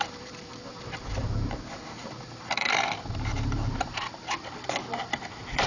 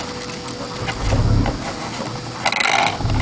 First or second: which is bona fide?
second